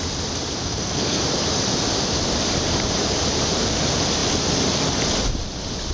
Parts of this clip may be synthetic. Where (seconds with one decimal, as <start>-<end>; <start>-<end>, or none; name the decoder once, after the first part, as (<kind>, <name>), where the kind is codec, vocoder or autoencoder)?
0.6-1.2 (codec, SNAC)